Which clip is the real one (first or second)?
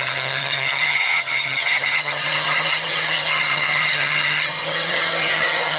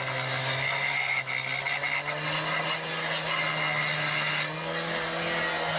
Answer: second